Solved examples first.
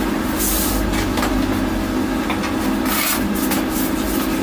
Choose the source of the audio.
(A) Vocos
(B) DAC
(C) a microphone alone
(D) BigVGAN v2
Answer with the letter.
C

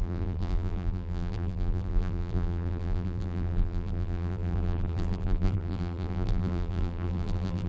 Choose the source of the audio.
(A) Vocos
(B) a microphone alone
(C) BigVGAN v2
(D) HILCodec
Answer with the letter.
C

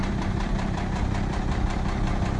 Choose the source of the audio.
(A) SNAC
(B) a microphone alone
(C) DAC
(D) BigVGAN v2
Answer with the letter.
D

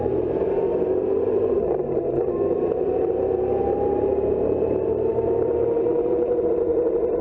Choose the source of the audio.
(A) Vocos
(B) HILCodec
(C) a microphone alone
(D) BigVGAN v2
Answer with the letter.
D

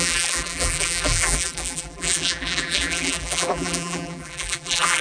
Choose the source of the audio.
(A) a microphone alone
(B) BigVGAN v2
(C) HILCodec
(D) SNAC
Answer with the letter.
B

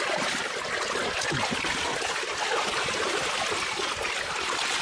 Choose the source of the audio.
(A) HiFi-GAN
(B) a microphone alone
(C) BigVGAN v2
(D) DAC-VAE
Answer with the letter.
B